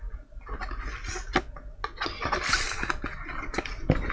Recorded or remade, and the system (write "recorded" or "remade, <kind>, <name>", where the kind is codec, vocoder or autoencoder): recorded